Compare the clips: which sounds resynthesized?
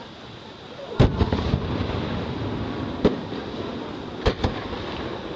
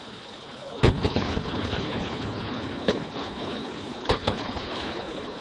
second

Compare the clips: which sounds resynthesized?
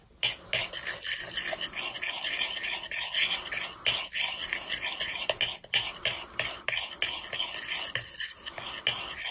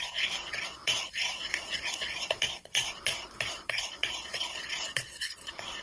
second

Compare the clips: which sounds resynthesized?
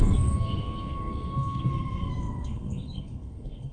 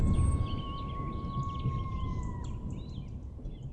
first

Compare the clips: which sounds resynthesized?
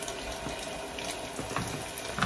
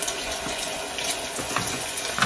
second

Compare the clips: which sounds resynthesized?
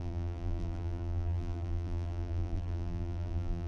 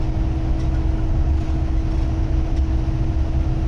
first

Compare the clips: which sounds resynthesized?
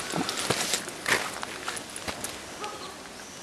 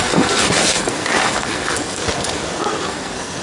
second